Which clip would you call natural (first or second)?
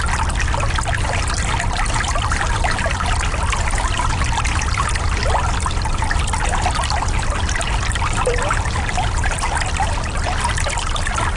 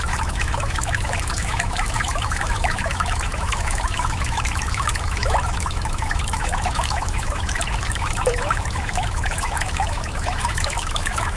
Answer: first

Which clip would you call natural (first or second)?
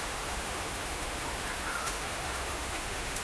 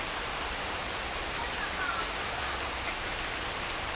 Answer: second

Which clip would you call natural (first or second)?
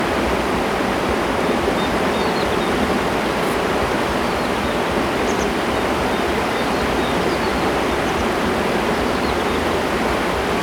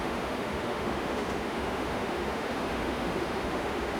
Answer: first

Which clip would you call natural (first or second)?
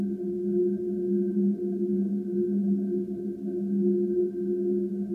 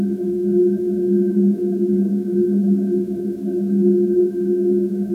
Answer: first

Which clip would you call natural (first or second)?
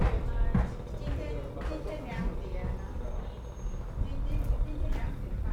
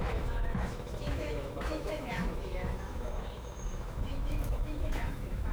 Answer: first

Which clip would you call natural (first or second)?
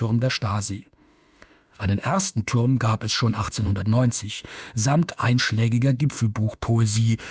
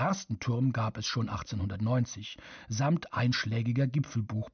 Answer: second